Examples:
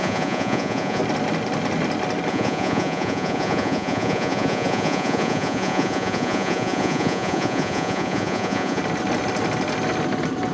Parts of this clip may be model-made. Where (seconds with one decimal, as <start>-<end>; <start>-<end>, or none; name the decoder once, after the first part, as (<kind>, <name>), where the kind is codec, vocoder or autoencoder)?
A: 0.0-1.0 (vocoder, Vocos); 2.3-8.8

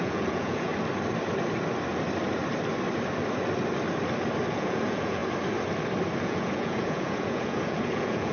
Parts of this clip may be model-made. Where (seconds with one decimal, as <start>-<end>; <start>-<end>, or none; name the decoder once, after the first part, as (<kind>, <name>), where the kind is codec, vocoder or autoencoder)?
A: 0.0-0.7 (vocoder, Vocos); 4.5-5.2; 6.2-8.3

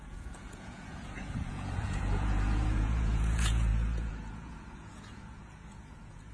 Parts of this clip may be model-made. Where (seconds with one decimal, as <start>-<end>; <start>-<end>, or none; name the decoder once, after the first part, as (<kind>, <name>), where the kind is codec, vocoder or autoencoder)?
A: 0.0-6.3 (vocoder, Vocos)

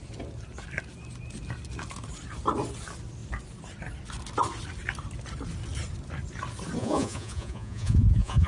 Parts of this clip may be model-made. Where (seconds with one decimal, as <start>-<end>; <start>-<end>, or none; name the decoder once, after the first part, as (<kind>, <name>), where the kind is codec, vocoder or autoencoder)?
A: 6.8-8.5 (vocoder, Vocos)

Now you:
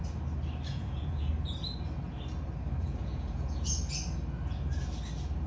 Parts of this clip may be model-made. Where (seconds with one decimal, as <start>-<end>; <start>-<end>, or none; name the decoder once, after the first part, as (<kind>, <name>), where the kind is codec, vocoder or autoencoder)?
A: 0.7-1.3 (vocoder, Vocos); 2.8-3.7

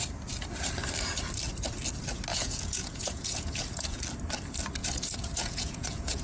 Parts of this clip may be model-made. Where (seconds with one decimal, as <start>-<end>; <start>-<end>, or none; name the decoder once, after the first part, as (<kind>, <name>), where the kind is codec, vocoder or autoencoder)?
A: 2.3-4.0 (vocoder, Vocos); 4.8-6.2

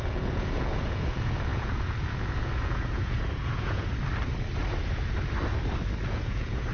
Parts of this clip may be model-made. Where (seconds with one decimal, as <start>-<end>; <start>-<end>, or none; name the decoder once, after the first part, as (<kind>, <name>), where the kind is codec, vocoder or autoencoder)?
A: 0.0-3.9 (vocoder, Vocos); 6.1-6.7